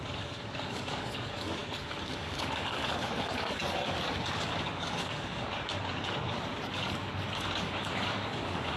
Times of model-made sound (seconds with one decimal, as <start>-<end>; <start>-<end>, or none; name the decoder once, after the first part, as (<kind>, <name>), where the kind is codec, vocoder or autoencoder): 0.0-8.8 (codec, DAC)